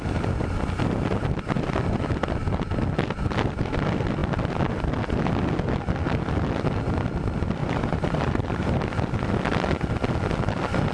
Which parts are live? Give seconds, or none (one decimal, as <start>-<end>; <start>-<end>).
0.0-7.6; 8.9-10.9